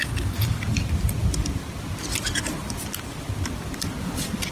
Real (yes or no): yes